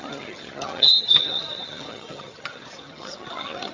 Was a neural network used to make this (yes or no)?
yes